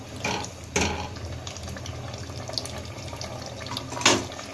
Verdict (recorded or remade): recorded